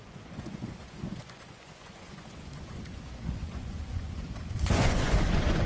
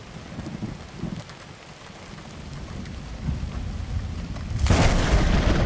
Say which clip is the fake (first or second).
first